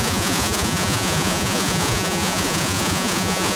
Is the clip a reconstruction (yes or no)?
yes